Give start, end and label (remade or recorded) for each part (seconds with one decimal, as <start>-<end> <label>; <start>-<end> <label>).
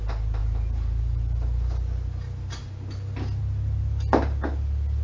0.0-5.0 recorded